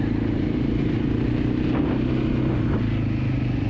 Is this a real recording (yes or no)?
yes